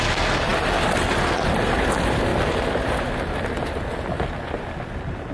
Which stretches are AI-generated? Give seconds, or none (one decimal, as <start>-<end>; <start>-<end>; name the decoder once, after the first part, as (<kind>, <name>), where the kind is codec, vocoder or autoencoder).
none

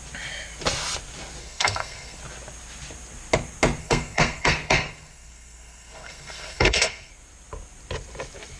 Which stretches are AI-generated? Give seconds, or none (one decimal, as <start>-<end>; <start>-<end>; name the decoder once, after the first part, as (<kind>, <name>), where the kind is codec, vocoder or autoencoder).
1.4-2.2 (codec, SNAC); 3.8-7.1

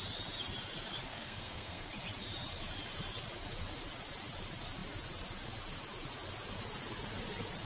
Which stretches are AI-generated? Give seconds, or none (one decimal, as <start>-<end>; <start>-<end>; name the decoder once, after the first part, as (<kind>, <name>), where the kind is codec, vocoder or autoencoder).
1.1-1.9 (codec, SNAC)

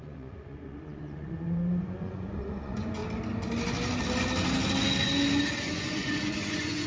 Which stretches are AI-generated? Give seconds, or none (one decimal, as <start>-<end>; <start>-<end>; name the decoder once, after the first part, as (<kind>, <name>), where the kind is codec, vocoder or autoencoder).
0.0-3.0 (vocoder, Vocos); 5.5-6.9

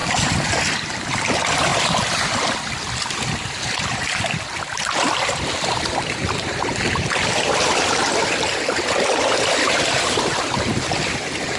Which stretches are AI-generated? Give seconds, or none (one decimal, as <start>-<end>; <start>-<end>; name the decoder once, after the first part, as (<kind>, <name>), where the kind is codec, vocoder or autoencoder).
0.7-11.6 (vocoder, BigVGAN v2)

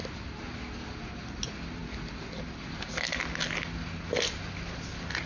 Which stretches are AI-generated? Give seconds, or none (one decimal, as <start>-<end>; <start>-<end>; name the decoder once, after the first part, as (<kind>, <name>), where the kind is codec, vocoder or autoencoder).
none